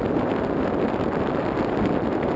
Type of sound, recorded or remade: recorded